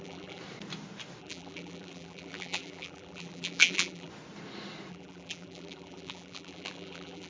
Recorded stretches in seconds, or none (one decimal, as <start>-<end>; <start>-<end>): 0.4-1.2; 4.1-4.9